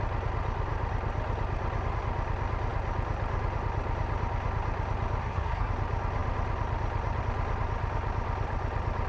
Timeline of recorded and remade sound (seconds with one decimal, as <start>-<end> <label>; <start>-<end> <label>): 0.0-5.2 recorded; 5.2-5.7 remade; 5.7-9.1 recorded